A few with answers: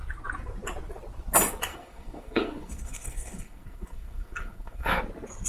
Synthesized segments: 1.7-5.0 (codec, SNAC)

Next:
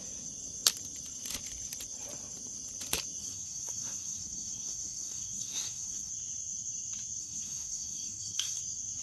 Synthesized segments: 3.2-6.1 (codec, SNAC); 7.2-8.6

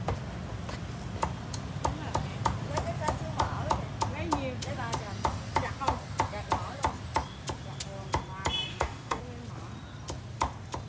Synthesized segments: 8.7-9.2 (codec, DAC)

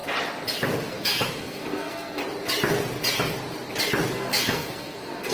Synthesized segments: 0.9-2.2 (codec, SNAC); 4.1-5.3